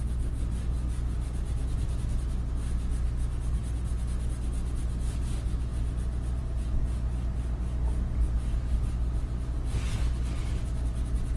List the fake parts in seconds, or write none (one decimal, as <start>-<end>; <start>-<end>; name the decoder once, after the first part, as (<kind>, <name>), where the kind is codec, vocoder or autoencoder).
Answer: none